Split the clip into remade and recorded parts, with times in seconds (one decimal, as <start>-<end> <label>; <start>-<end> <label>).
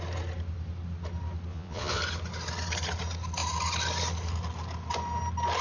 0.0-1.5 recorded; 1.5-2.0 remade; 2.0-5.6 recorded